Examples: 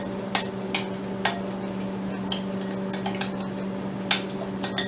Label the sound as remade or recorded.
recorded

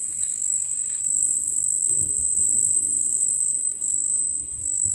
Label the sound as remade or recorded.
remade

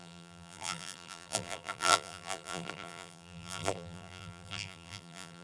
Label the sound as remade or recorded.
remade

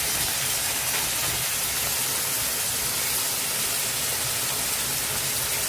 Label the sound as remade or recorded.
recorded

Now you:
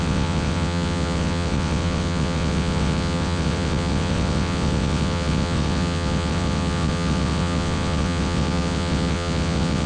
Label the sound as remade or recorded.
remade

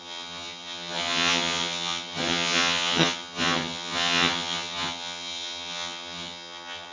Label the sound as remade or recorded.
remade